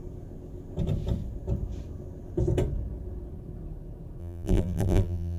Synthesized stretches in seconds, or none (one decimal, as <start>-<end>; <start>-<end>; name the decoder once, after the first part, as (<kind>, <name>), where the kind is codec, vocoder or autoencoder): 4.2-5.4 (vocoder, BigVGAN v2)